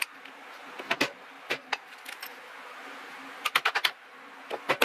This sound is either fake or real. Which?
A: real